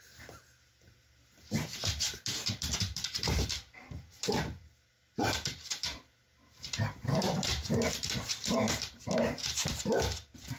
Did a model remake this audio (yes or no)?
yes